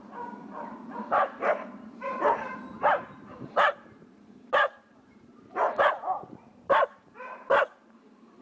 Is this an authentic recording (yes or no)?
no